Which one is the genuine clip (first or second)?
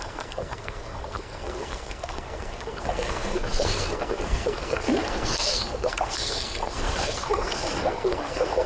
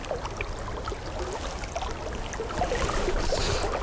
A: second